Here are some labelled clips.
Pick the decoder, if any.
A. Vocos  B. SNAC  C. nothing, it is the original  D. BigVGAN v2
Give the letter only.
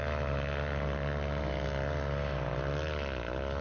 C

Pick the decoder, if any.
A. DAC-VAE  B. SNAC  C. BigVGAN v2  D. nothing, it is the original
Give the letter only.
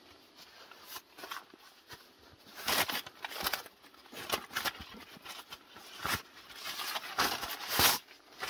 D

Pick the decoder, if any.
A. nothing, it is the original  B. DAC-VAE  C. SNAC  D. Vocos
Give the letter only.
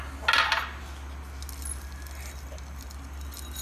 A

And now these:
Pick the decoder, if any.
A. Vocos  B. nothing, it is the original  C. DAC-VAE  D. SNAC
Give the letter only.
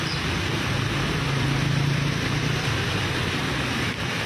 B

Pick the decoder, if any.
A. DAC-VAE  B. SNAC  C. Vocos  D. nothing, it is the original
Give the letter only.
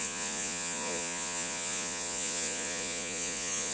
C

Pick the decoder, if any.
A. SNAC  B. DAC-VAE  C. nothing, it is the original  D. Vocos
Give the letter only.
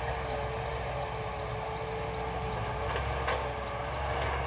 C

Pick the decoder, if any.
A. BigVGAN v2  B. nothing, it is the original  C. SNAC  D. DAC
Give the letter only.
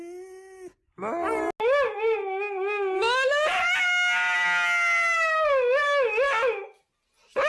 B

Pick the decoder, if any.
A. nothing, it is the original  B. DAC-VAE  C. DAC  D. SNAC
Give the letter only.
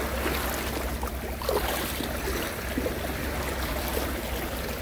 A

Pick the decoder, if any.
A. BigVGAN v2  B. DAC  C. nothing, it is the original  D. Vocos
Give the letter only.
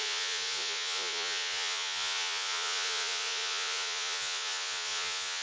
D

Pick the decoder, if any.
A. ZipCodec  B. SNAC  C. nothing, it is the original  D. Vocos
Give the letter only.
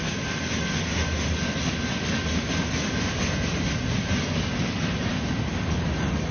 C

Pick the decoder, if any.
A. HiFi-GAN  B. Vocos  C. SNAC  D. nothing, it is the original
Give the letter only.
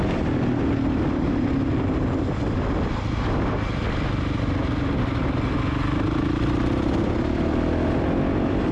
D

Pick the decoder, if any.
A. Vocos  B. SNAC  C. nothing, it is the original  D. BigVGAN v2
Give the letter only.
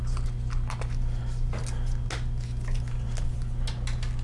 C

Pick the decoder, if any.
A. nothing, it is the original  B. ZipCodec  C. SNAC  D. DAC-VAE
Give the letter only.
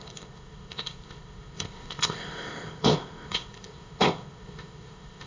B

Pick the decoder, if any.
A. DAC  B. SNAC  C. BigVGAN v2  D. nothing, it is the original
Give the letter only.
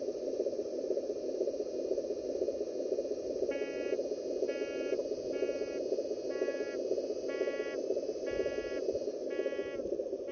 D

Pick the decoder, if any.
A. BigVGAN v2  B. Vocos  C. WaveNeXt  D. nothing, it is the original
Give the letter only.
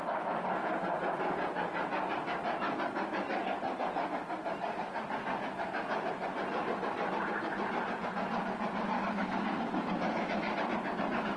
D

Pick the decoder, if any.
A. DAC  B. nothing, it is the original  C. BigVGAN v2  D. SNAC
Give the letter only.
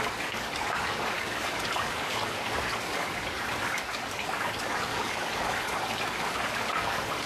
A